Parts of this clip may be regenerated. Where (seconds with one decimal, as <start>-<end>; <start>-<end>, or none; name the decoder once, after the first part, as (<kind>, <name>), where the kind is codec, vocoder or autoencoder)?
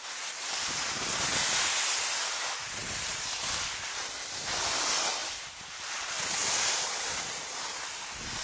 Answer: 2.8-3.4 (vocoder, BigVGAN v2); 5.2-5.9; 6.4-7.4